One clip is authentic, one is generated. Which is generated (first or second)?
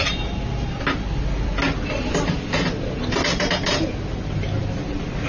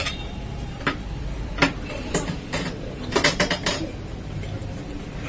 second